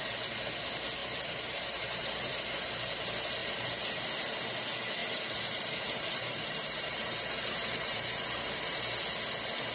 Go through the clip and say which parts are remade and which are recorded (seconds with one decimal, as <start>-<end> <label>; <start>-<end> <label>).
0.0-1.0 recorded; 1.0-2.3 remade; 2.3-3.4 recorded; 3.4-4.0 remade; 4.0-5.0 recorded; 5.0-8.8 remade; 8.8-9.7 recorded